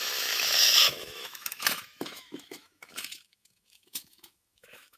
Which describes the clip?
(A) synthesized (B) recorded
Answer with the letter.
A